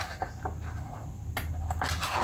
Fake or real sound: real